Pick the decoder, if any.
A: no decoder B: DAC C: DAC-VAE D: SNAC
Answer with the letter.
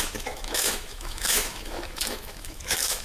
C